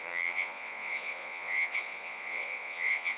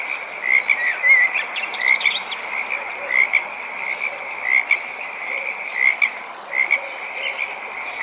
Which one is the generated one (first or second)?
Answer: first